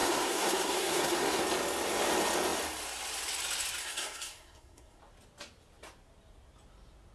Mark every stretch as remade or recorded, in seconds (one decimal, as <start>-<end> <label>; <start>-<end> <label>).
0.0-1.4 remade; 1.4-3.8 recorded; 3.8-5.0 remade; 5.0-7.1 recorded